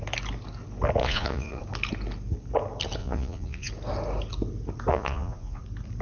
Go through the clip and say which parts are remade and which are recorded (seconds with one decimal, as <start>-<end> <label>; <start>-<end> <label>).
0.0-1.0 recorded; 1.0-1.6 remade; 1.6-3.0 recorded; 3.0-3.7 remade; 3.7-4.9 recorded; 4.9-5.6 remade; 5.6-6.0 recorded